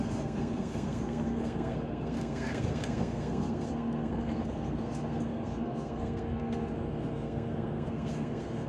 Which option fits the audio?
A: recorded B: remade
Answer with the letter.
B